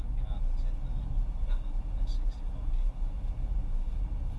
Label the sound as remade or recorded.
recorded